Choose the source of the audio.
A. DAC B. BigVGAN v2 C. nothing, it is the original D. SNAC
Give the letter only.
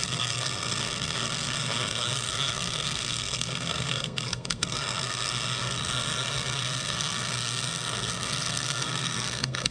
D